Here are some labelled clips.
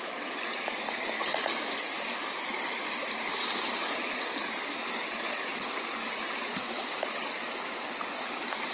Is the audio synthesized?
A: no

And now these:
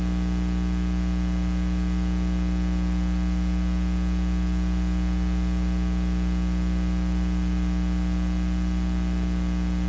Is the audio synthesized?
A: no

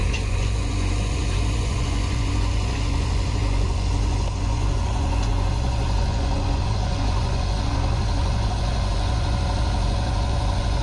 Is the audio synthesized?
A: yes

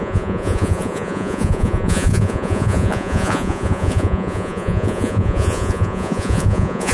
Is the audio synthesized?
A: yes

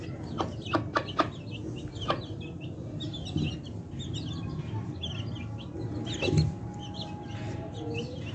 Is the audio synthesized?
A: no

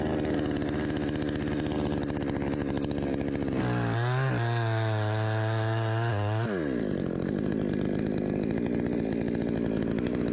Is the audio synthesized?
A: no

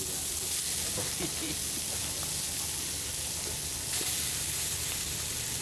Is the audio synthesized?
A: no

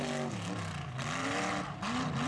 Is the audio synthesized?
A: no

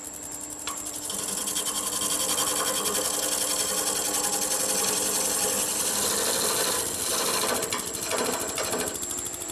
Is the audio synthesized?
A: no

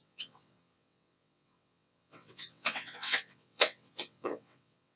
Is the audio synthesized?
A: yes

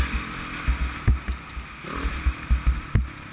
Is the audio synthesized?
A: no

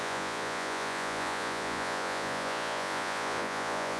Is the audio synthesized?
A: yes